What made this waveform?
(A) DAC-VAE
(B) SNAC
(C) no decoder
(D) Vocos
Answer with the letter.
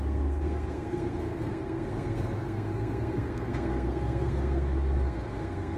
B